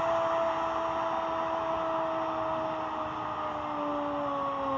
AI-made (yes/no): no